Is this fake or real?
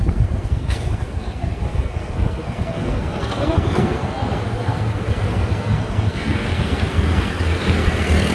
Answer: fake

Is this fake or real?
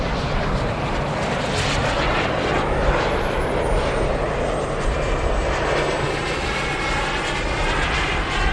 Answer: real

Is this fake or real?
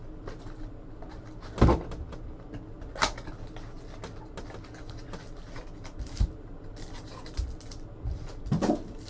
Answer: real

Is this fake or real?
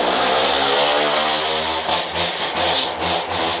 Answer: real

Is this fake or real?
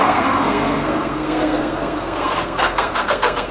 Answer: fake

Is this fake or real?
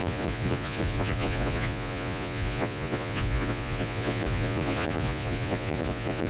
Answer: fake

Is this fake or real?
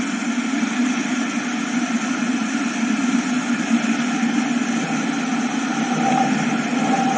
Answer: real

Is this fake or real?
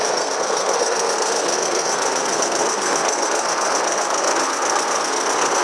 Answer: fake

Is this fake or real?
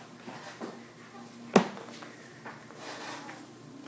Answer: real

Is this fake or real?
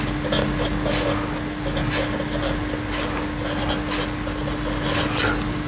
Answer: real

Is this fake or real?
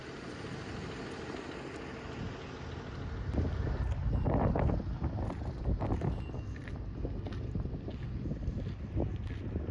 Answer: real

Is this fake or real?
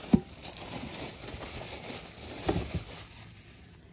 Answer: real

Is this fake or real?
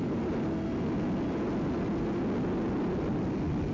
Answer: real